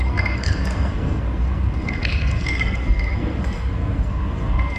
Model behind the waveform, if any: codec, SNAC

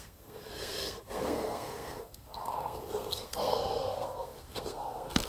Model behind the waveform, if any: codec, SNAC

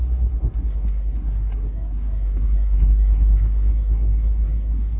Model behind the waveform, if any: codec, SNAC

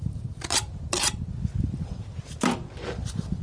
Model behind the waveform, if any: none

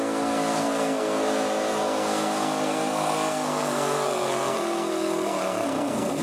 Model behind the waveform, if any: codec, SNAC